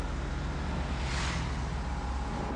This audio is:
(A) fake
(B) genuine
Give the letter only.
B